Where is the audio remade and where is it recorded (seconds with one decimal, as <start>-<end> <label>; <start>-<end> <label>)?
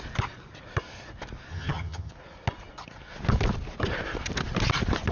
0.0-1.5 recorded; 1.5-2.1 remade; 2.1-5.1 recorded